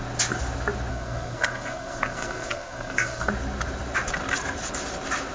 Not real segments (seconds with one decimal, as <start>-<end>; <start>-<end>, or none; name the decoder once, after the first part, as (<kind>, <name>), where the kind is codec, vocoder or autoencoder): 0.9-3.3 (codec, SNAC)